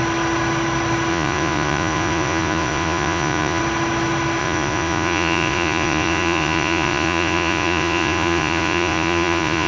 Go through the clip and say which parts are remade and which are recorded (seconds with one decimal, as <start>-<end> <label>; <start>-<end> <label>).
0.0-1.1 recorded; 1.1-3.6 remade; 3.6-4.4 recorded; 4.4-9.7 remade